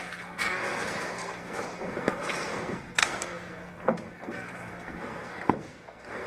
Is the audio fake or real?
fake